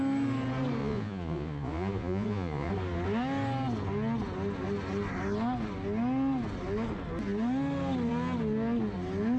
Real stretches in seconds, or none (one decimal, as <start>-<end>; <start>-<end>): 0.0-0.8; 2.7-9.4